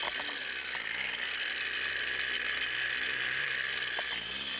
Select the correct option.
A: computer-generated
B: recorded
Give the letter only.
B